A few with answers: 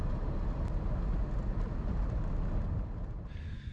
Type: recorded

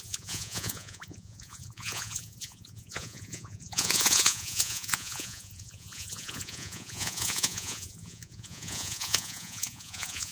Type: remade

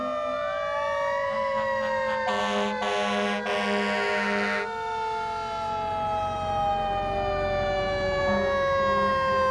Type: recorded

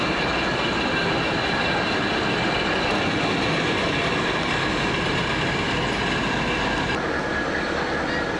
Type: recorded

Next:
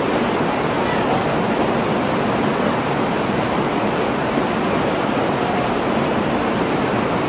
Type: recorded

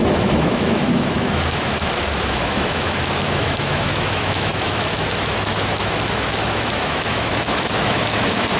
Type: remade